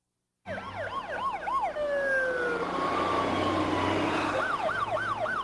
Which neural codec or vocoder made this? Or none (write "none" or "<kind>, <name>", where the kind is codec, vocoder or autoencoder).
none